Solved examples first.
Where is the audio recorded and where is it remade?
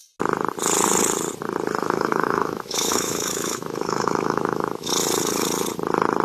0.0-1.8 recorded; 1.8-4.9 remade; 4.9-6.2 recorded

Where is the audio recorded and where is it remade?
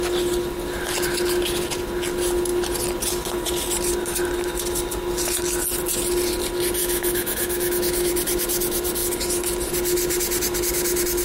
0.0-6.8 recorded; 6.8-8.1 remade; 8.1-11.2 recorded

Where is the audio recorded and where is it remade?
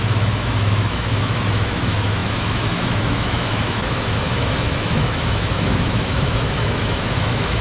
0.0-7.6 remade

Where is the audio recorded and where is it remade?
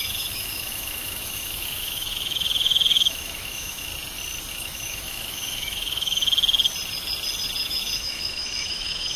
0.0-3.9 remade; 3.9-4.5 recorded; 4.5-6.2 remade; 6.2-7.6 recorded; 7.6-9.2 remade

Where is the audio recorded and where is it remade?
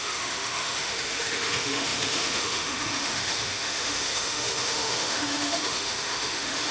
0.0-6.7 remade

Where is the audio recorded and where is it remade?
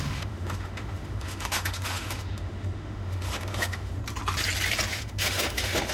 0.0-4.0 remade; 4.0-4.9 recorded; 4.9-5.9 remade